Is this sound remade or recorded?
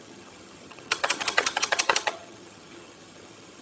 remade